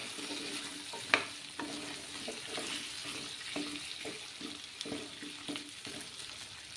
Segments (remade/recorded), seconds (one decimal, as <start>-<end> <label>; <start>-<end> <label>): 0.0-6.8 recorded

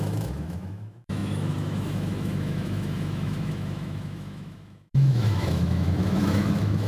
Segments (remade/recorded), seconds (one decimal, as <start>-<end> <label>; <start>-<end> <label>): 0.0-6.9 remade

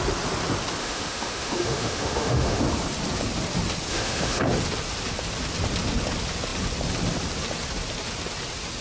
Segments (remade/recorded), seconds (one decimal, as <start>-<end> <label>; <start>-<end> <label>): 0.0-0.8 recorded; 0.8-2.6 remade; 2.6-3.9 recorded; 3.9-4.4 remade; 4.4-8.8 recorded

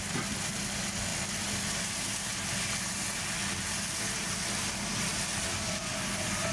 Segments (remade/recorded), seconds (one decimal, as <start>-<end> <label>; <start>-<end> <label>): 0.0-6.5 recorded

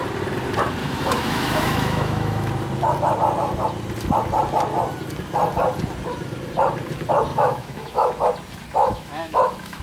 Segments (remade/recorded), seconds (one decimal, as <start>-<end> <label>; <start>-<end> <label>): 0.0-0.8 recorded; 0.8-2.5 remade; 2.5-7.3 recorded; 7.3-8.3 remade; 8.3-8.8 recorded; 8.8-9.8 remade

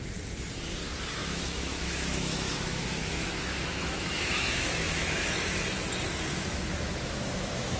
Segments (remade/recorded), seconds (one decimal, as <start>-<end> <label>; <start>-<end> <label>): 0.0-1.2 recorded; 1.2-5.2 remade; 5.2-6.3 recorded; 6.3-7.8 remade

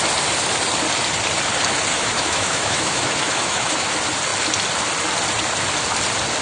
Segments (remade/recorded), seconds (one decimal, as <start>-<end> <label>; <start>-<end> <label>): 0.0-1.9 recorded; 1.9-3.9 remade; 3.9-6.4 recorded

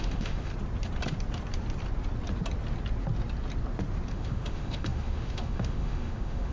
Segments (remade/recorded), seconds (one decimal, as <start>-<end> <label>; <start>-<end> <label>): 0.0-0.5 remade; 0.5-4.1 recorded; 4.1-6.5 remade